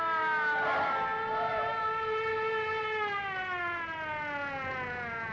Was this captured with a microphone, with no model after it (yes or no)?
yes